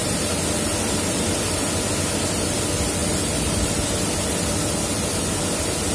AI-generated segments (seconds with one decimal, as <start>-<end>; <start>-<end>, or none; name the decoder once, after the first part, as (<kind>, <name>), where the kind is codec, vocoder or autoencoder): 0.0-1.7 (vocoder, BigVGAN v2); 3.0-5.3